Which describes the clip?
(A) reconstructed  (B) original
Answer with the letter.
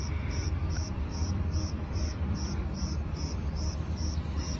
A